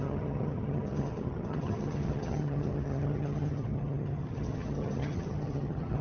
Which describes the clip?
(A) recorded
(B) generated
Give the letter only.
B